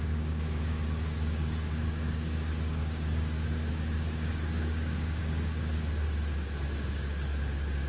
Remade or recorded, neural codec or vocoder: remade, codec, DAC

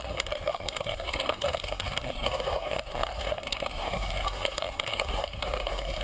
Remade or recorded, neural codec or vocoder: remade, codec, SNAC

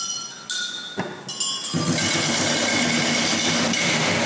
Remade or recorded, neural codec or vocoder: recorded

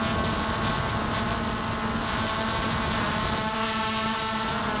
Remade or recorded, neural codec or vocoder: recorded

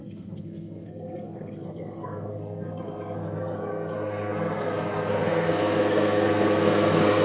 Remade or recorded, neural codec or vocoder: remade, codec, SNAC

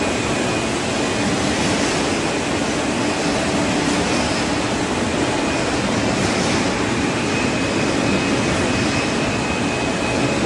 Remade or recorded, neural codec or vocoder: recorded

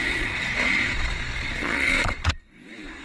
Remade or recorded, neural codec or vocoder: remade, vocoder, Vocos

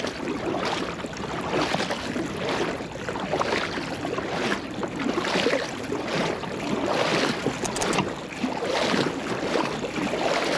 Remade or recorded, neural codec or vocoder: recorded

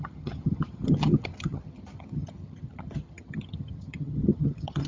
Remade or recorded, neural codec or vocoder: remade, vocoder, HiFi-GAN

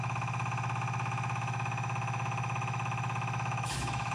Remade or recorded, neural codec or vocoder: remade, autoencoder, DAC-VAE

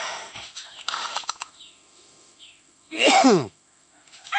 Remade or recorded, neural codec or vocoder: remade, autoencoder, DAC-VAE